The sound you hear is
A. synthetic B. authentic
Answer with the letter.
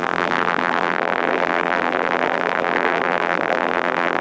A